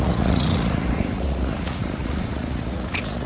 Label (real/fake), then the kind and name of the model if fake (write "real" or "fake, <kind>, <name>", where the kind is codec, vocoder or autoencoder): fake, vocoder, Vocos